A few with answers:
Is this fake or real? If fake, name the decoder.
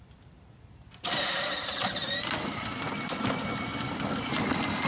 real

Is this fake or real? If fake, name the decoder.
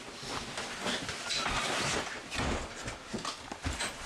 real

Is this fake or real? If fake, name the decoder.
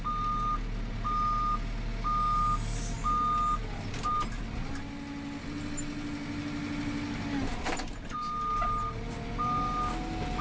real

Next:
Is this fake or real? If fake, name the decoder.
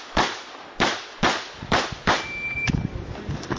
real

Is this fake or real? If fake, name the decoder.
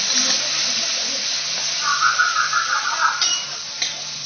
real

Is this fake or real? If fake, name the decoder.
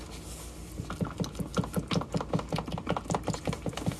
real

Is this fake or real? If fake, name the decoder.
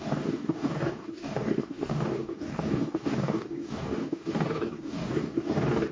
fake, codec, DAC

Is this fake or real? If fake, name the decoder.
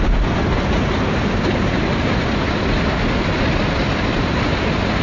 real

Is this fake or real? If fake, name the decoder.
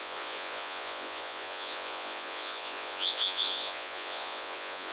fake, vocoder, Vocos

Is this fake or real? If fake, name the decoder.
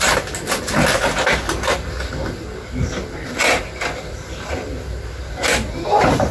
real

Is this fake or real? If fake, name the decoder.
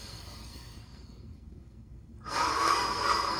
fake, codec, SNAC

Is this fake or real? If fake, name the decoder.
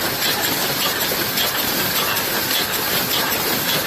real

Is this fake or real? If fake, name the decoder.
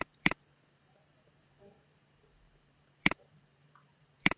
fake, vocoder, BigVGAN v2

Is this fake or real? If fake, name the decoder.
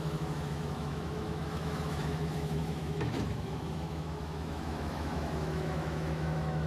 fake, autoencoder, DAC-VAE